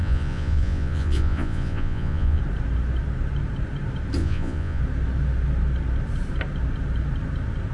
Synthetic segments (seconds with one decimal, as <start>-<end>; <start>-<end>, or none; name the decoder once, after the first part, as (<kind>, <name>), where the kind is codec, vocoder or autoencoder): 0.0-2.4 (vocoder, Vocos); 4.2-4.8